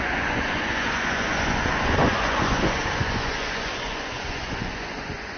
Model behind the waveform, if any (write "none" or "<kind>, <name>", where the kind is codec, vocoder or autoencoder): vocoder, Vocos